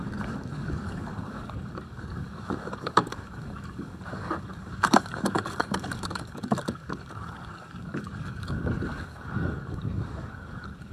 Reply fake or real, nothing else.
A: fake